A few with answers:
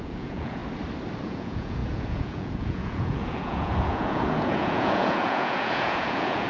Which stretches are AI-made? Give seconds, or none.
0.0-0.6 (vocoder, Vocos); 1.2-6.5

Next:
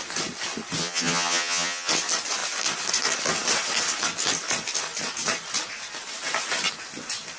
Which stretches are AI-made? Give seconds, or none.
0.8-1.9 (vocoder, HiFi-GAN)

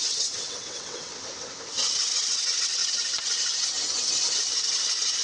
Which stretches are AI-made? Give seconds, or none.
0.0-1.1 (vocoder, WaveNeXt); 1.7-2.8

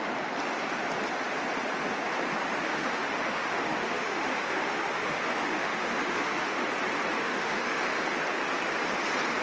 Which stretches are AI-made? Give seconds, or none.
2.7-6.7 (autoencoder, DAC-VAE); 7.2-8.0